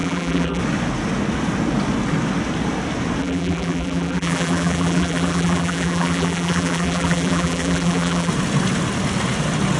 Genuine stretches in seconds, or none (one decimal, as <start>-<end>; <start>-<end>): 0.6-3.2; 8.3-9.8